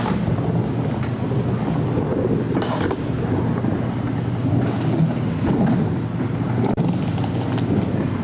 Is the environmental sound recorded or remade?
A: recorded